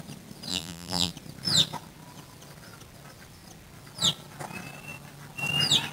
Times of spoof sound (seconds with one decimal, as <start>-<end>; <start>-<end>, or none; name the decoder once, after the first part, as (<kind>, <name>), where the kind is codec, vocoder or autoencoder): 0.5-1.1 (vocoder, BigVGAN v2)